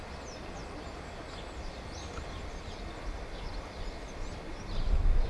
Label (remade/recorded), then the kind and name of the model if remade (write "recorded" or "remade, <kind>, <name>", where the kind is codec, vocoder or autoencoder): recorded